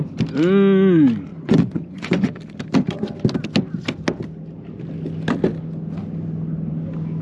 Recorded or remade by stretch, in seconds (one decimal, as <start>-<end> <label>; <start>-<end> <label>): 0.0-1.3 recorded; 1.3-2.4 remade; 2.4-7.2 recorded